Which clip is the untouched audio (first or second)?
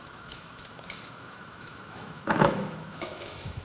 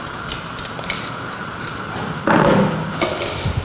second